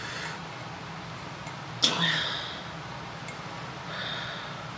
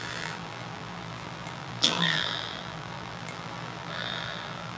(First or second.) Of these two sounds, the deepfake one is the second